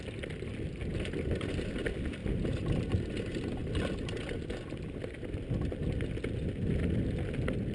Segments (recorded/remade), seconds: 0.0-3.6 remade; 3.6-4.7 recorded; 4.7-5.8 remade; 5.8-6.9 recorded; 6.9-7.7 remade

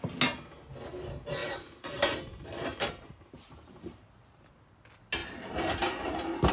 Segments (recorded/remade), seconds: 0.0-1.4 recorded; 1.4-4.6 remade; 4.6-5.2 recorded; 5.2-6.5 remade

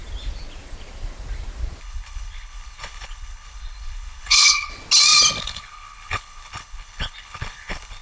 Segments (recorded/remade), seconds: 0.0-1.8 recorded; 1.8-4.7 remade; 4.7-5.4 recorded; 5.4-8.0 remade